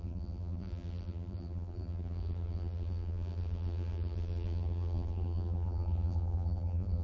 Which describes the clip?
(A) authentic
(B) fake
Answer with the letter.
B